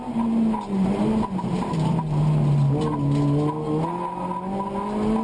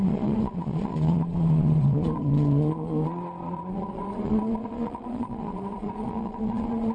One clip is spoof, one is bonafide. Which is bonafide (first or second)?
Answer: first